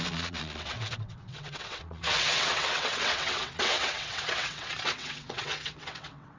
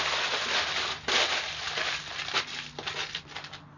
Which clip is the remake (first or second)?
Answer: first